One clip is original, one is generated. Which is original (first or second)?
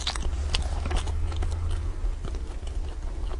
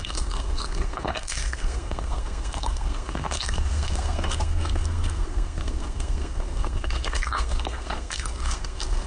first